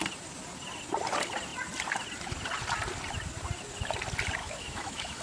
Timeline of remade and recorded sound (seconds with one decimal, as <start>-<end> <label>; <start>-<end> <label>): 0.0-4.4 recorded; 4.4-5.2 remade

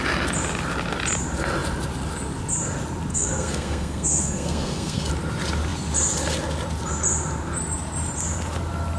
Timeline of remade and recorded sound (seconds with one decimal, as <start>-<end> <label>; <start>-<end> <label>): 0.0-3.1 recorded; 3.1-5.1 remade; 5.1-9.0 recorded